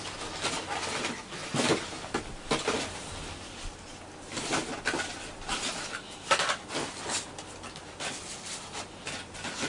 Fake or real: real